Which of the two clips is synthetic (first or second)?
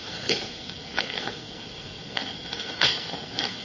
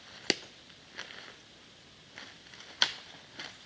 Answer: first